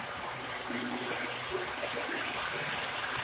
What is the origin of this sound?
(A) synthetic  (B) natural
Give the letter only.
B